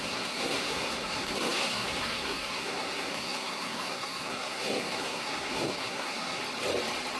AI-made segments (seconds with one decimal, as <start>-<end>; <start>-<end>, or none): 0.0-6.4